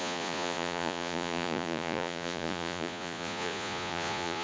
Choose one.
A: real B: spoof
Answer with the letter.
B